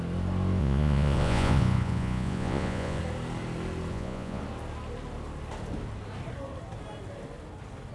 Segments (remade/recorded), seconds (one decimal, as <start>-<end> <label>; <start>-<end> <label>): 0.0-0.6 recorded; 0.6-3.0 remade; 3.0-3.9 recorded; 3.9-4.4 remade; 4.4-7.9 recorded

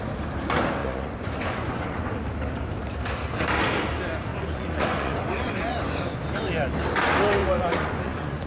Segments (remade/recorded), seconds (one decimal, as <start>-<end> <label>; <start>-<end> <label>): 0.0-0.8 recorded; 0.8-2.1 remade; 2.1-4.3 recorded; 4.3-6.2 remade; 6.2-7.4 recorded; 7.4-8.5 remade

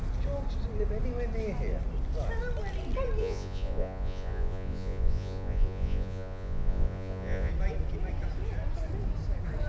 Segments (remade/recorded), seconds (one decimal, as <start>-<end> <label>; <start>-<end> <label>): 0.0-3.2 recorded; 3.2-7.5 remade; 7.5-9.7 recorded

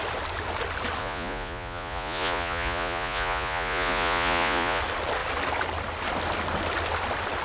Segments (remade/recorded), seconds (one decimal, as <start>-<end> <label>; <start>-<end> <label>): 0.0-1.0 recorded; 1.0-4.8 remade; 4.8-7.4 recorded

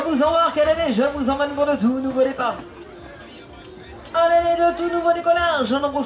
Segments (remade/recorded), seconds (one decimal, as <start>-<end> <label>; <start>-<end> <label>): 0.0-6.1 recorded

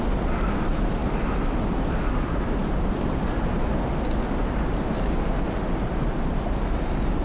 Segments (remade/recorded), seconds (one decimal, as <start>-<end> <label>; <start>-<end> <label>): 0.0-7.2 recorded

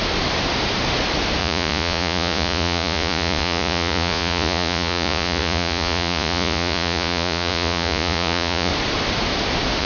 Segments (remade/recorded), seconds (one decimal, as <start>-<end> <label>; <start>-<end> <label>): 0.0-1.4 recorded; 1.4-8.7 remade; 8.7-9.8 recorded